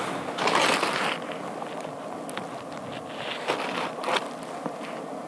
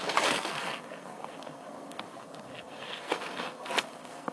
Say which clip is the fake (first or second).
second